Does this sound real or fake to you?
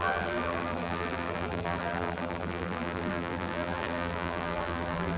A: fake